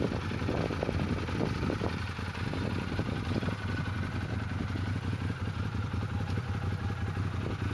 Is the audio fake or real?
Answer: real